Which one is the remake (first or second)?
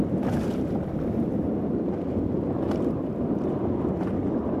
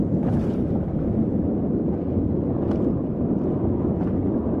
first